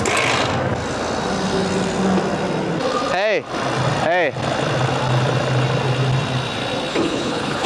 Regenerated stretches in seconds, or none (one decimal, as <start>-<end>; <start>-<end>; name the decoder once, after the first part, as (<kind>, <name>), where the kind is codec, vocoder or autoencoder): 6.9-7.7 (codec, HILCodec)

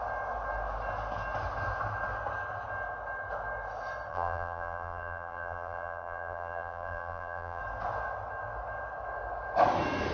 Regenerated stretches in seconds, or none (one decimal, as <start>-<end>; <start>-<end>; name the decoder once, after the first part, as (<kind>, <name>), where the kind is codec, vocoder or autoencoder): 4.1-7.6 (vocoder, BigVGAN v2)

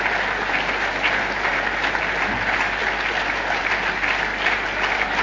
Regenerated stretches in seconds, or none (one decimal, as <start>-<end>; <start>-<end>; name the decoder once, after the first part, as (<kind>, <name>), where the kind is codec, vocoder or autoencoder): none